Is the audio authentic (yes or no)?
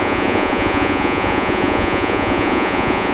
no